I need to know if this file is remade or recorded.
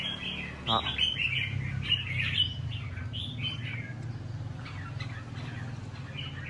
recorded